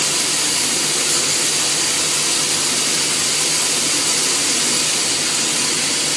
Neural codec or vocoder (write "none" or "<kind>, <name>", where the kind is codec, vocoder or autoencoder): none